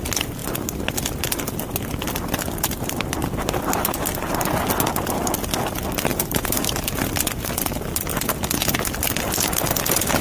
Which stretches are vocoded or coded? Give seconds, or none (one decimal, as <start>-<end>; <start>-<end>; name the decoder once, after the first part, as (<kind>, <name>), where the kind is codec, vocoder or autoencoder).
6.1-6.9 (vocoder, BigVGAN v2)